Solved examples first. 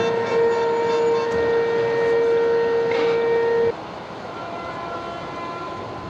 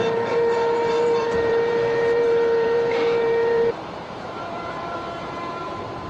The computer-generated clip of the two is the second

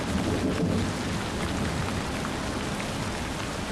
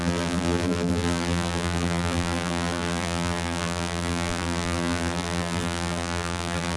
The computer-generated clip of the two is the second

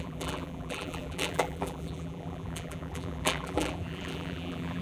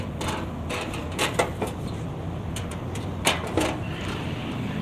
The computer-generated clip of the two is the first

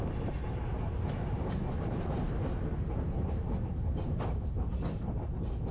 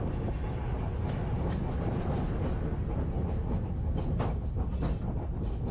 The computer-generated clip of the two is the first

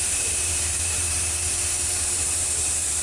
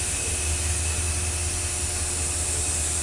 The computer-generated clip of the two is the first